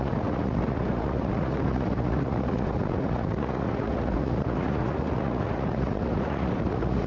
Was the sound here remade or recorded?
remade